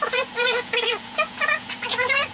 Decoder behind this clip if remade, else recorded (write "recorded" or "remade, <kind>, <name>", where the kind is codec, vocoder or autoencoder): remade, vocoder, Vocos